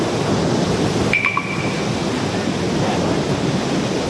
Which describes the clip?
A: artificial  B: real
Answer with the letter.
B